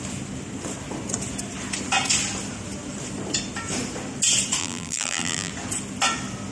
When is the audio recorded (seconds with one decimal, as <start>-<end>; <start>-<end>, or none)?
0.0-4.6; 5.5-6.5